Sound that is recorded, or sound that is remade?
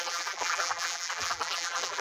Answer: remade